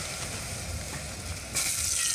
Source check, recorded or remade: recorded